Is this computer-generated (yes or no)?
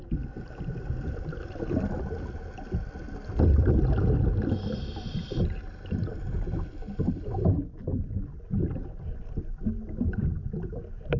no